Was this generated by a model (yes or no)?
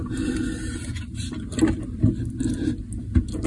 no